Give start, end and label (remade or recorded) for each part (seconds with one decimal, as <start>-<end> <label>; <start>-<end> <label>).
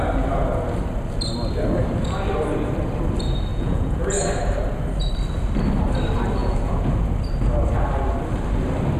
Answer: 0.0-3.5 recorded; 3.5-4.0 remade; 4.0-6.4 recorded; 6.4-7.1 remade; 7.1-9.0 recorded